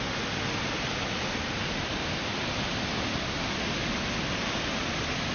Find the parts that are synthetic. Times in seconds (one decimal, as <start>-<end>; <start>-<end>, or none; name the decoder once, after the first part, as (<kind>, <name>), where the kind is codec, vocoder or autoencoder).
none